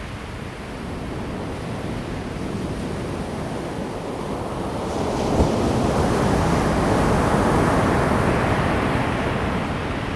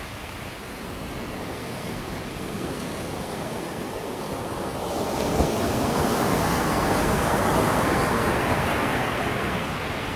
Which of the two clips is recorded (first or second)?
first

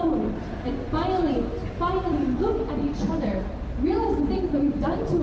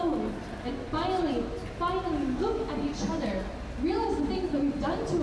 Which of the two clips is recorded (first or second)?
second